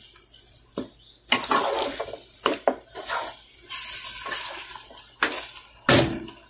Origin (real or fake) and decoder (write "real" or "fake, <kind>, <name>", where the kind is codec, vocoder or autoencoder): real